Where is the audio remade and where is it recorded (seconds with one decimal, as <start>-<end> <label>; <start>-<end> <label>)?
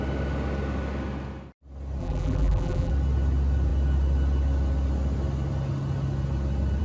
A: 0.0-2.0 recorded; 2.0-2.9 remade; 2.9-6.8 recorded